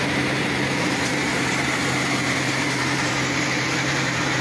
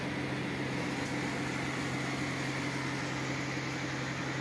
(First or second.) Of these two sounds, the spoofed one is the first